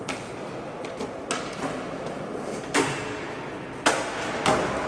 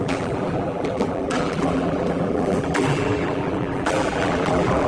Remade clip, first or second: second